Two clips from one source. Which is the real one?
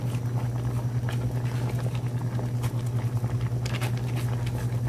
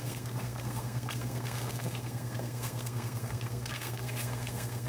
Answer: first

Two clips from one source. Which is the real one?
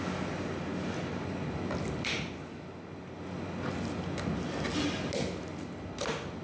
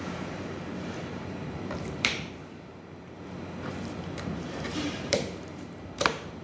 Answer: first